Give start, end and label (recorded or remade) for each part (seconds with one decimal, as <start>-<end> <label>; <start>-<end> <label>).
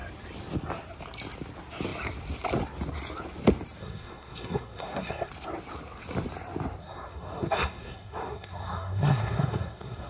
0.0-3.8 recorded; 3.8-5.3 remade; 5.3-6.8 recorded; 6.8-10.1 remade